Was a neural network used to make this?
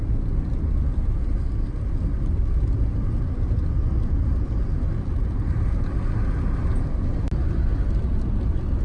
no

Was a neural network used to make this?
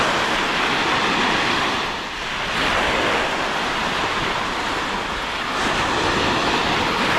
no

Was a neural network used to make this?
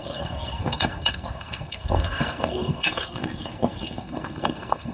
yes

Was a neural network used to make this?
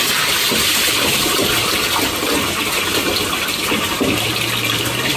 no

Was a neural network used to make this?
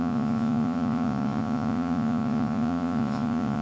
yes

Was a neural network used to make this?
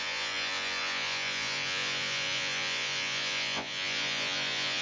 yes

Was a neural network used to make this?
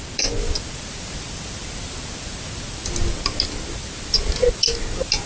no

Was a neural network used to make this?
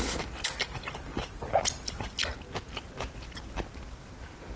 no